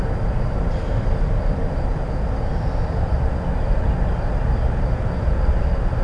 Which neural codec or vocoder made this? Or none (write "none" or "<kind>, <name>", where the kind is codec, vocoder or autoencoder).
none